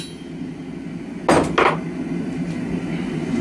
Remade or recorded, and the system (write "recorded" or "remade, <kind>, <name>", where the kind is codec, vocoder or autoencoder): recorded